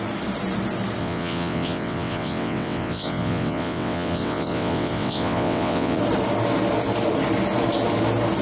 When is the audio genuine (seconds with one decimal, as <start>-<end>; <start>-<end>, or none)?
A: 0.0-1.0; 6.0-8.4